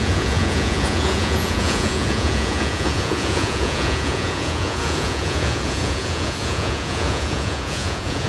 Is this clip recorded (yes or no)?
no